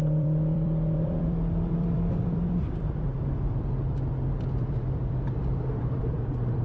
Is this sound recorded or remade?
remade